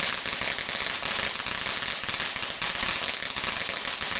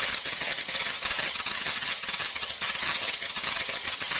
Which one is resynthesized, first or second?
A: second